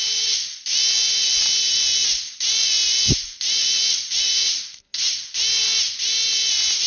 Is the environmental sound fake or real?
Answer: real